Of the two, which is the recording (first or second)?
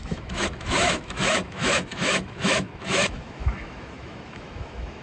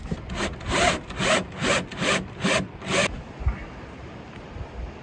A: second